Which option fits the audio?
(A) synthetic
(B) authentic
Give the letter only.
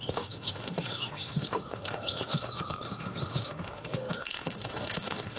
A